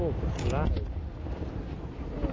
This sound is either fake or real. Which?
real